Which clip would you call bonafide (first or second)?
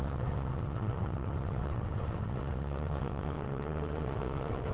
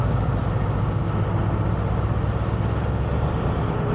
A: second